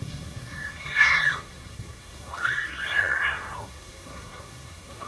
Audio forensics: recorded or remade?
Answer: remade